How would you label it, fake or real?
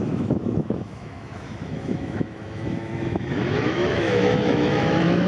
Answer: fake